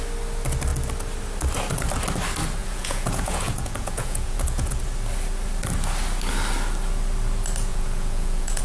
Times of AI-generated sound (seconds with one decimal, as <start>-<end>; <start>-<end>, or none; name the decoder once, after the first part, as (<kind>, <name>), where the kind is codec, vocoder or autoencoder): 2.6-4.8 (vocoder, Vocos); 7.7-8.6